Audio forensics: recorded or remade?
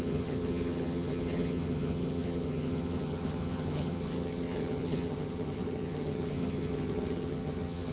remade